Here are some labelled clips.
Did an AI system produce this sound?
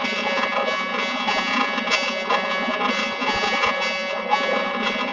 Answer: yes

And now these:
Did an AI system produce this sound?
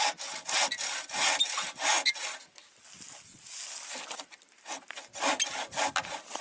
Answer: no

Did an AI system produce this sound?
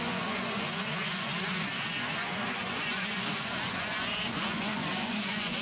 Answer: yes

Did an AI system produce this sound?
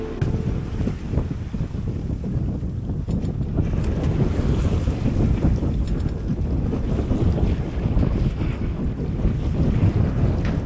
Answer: no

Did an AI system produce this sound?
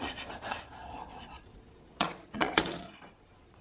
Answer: yes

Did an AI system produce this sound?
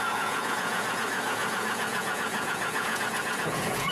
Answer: yes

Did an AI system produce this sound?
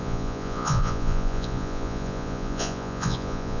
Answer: yes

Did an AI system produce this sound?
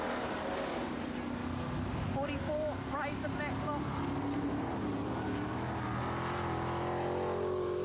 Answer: no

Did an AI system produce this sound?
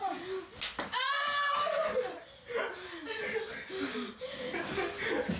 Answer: no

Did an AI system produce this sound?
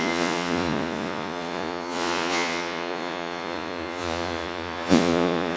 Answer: yes